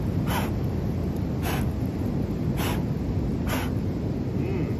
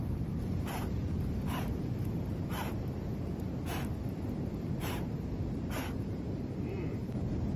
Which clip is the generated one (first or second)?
second